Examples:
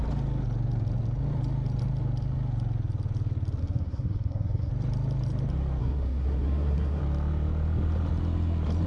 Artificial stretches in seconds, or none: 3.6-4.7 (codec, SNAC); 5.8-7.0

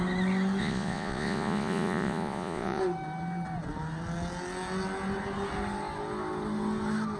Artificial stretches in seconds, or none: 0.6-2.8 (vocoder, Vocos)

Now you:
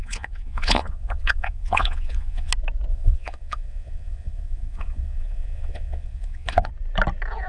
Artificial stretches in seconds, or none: 0.0-2.5 (vocoder, Vocos); 2.9-6.7